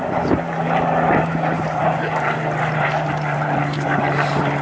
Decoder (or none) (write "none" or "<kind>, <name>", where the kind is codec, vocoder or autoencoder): vocoder, BigVGAN v2